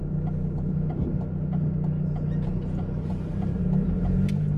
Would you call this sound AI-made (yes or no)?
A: no